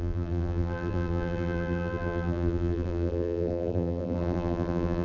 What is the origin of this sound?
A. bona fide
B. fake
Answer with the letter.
B